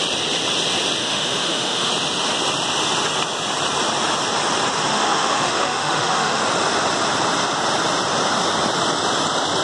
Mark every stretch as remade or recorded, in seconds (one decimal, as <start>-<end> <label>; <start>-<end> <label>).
0.0-1.0 recorded; 1.0-1.9 remade; 1.9-4.9 recorded; 4.9-6.4 remade; 6.4-9.6 recorded